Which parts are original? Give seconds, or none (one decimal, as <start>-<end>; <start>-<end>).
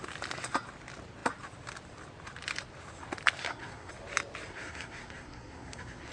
0.0-3.4; 3.9-4.5